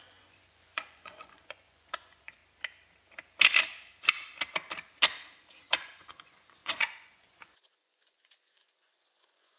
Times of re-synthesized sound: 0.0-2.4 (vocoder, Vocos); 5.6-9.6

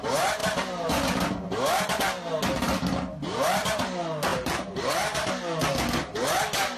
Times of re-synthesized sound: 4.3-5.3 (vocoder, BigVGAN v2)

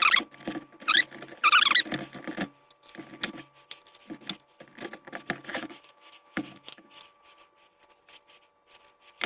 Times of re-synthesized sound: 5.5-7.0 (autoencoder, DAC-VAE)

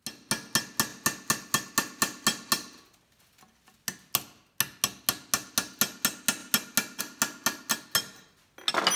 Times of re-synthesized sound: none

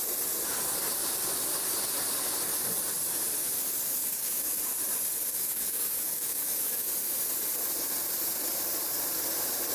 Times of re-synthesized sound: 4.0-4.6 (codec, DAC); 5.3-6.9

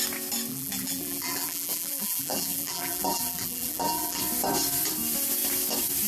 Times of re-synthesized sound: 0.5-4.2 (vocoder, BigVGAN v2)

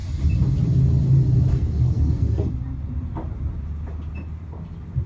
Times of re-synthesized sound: 1.5-2.5 (codec, SNAC)